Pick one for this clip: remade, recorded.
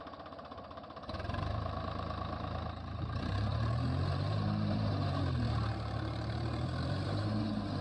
remade